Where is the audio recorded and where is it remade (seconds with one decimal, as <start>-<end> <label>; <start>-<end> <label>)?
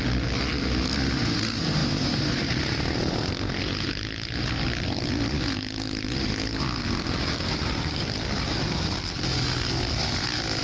0.0-10.6 recorded